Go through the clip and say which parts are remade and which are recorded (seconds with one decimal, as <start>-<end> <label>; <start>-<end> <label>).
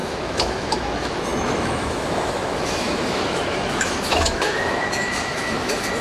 0.0-6.0 remade